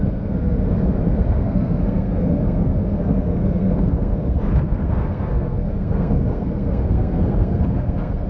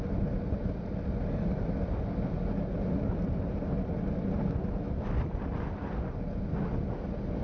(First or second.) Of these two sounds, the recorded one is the second